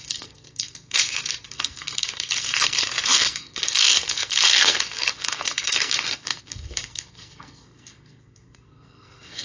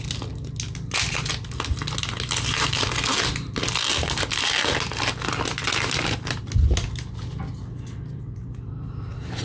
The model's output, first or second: first